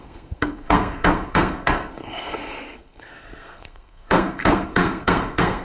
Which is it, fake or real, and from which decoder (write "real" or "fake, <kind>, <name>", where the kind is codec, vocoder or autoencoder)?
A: fake, codec, SNAC